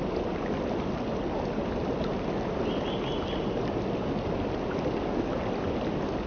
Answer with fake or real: real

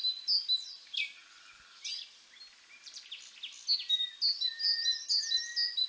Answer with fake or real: real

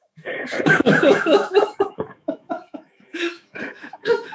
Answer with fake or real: fake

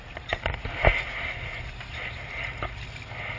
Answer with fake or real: real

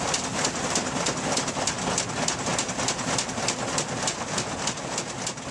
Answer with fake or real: real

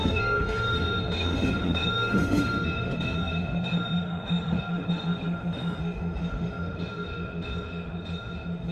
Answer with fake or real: fake